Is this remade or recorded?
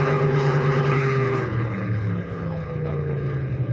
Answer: remade